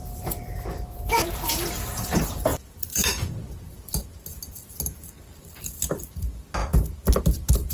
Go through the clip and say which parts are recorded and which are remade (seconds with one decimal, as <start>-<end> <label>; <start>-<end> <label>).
0.0-1.6 remade; 1.6-2.5 recorded; 2.5-4.0 remade; 4.0-7.7 recorded

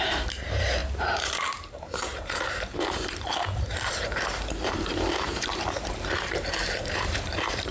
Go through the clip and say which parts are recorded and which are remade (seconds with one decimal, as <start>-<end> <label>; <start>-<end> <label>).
0.0-7.7 remade